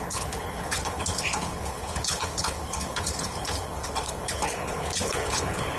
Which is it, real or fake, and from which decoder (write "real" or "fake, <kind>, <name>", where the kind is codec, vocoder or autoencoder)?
fake, codec, HILCodec